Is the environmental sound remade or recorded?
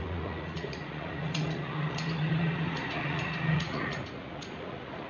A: remade